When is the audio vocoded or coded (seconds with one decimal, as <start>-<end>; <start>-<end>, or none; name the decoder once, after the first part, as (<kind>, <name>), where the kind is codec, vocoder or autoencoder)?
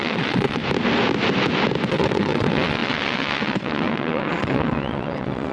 0.0-0.6 (vocoder, WaveNeXt); 1.9-5.5